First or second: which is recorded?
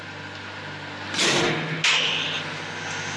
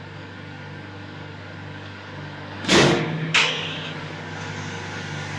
first